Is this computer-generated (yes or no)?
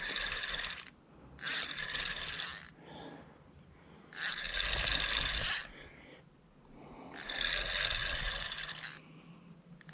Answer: no